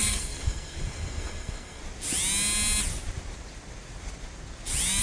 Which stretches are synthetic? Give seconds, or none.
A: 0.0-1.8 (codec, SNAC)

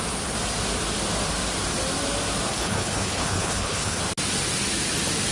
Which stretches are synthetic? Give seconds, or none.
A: 2.5-4.0 (codec, HILCodec)

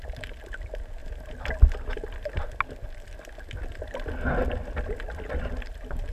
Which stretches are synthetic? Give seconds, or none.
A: none